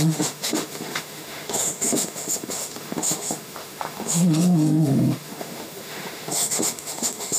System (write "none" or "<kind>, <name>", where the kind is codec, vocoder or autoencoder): autoencoder, DAC-VAE